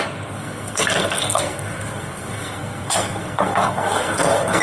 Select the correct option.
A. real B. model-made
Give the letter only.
B